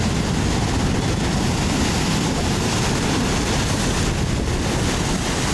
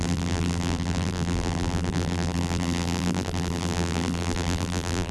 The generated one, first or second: second